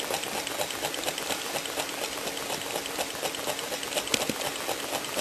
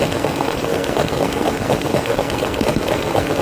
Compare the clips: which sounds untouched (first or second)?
first